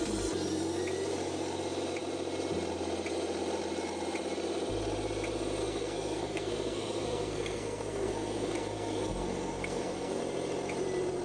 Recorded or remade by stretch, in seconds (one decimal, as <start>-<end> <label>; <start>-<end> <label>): 0.0-5.6 recorded; 5.6-10.2 remade; 10.2-11.2 recorded